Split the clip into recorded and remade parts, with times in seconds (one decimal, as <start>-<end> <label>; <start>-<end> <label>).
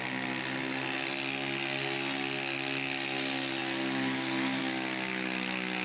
0.0-5.8 recorded